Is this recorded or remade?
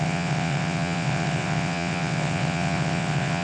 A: remade